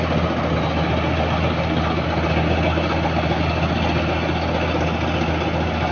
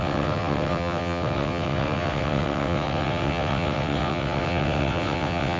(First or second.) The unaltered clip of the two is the first